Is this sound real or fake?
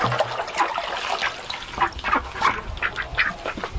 real